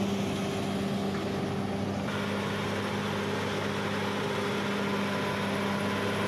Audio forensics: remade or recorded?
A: recorded